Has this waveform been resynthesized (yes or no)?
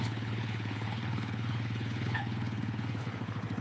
yes